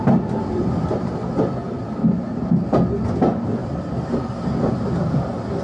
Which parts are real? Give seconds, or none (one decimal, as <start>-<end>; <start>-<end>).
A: 0.0-5.6